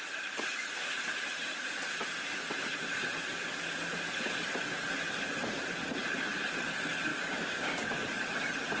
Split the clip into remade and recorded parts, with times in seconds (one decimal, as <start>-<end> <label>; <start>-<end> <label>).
0.0-7.1 recorded; 7.1-8.0 remade; 8.0-8.8 recorded